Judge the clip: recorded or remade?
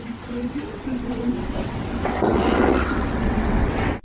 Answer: remade